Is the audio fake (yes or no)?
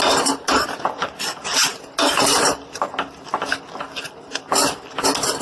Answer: no